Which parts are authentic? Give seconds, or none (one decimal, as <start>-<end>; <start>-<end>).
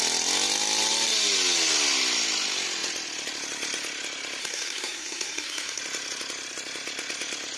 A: 0.0-4.4; 5.8-7.6